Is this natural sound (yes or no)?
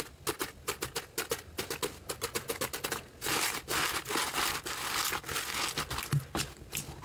yes